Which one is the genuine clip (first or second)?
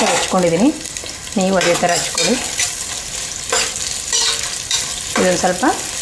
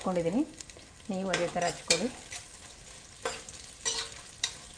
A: second